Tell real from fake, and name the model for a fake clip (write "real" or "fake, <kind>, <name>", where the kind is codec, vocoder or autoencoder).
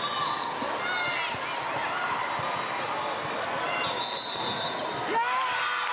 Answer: real